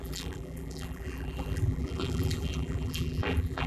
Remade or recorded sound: remade